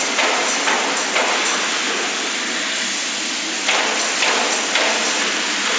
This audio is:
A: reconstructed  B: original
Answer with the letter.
B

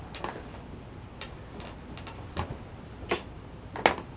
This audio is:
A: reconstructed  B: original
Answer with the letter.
B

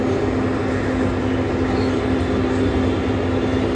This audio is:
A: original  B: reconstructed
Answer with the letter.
A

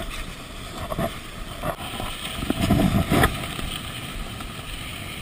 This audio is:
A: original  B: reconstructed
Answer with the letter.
A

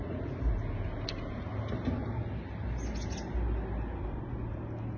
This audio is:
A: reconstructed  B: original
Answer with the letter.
B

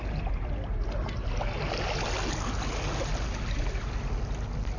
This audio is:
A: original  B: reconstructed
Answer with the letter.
A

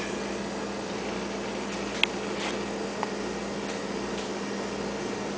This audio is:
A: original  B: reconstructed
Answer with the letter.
A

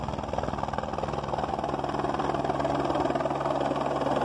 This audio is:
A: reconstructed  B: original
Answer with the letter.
B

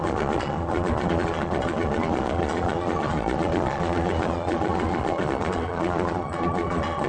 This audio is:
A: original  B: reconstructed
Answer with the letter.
B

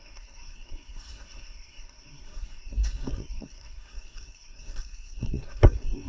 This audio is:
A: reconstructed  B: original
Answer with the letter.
A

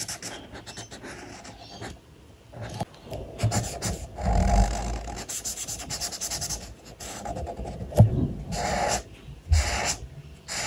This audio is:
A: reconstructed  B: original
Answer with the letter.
B